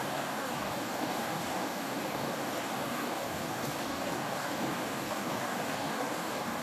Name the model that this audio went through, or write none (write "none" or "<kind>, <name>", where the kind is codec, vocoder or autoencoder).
codec, DAC